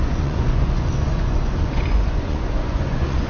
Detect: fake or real fake